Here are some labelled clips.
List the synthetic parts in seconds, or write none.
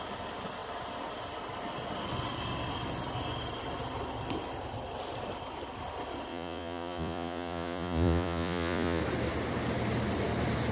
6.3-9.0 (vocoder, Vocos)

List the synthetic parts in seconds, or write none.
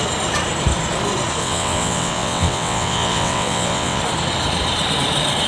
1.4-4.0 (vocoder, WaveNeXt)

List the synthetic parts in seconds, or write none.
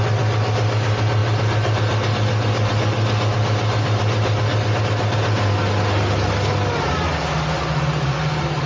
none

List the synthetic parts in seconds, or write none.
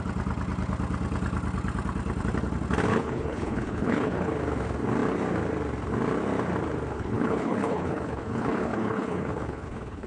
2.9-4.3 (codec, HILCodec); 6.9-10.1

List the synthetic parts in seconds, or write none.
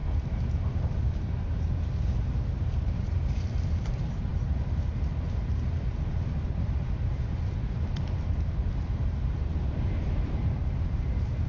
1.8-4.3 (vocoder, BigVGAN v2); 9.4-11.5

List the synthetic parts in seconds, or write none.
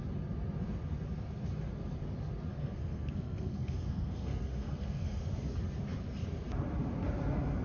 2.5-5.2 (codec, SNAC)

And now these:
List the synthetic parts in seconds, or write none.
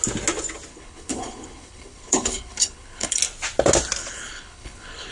0.7-3.2 (codec, HILCodec); 4.0-5.1